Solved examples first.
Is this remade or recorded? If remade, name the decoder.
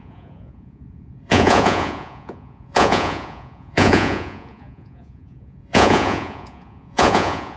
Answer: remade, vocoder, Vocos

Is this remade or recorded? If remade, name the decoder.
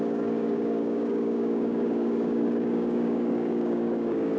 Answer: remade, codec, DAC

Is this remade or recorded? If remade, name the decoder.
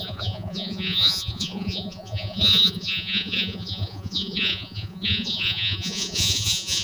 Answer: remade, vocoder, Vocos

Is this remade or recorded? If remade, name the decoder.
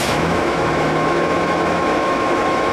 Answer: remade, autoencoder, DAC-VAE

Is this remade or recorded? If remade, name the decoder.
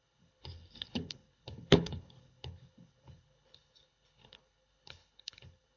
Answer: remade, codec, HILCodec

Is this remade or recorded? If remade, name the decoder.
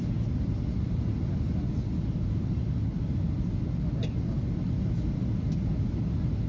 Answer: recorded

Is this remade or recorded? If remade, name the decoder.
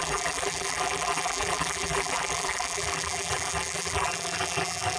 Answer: remade, vocoder, BigVGAN v2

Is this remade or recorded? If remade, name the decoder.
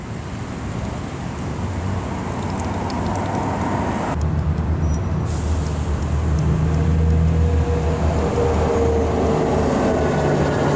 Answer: recorded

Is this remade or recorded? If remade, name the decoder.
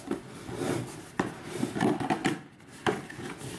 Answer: recorded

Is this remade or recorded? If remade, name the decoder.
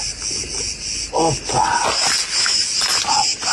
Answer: recorded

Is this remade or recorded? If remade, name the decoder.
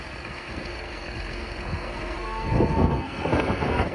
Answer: remade, codec, SNAC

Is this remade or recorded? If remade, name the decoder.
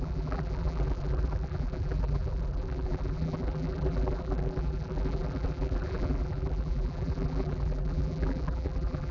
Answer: remade, vocoder, BigVGAN v2